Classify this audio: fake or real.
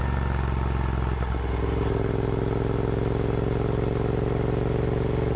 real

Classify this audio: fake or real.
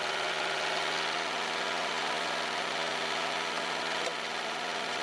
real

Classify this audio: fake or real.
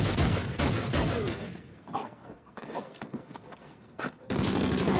fake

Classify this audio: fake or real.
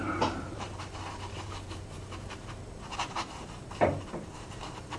fake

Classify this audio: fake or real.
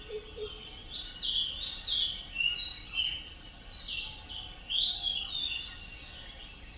real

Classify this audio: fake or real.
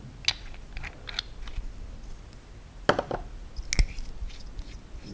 real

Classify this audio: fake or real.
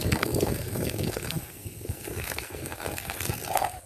fake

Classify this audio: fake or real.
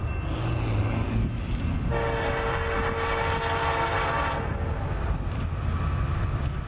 real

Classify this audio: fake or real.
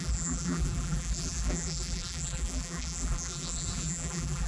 fake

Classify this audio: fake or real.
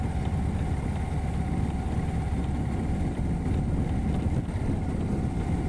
real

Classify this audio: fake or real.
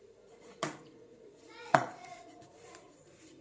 fake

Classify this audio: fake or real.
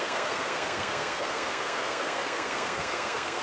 fake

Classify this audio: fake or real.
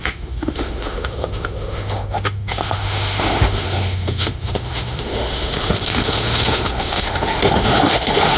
fake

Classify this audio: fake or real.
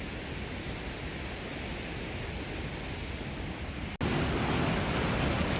real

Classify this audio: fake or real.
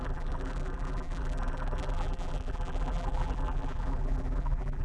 fake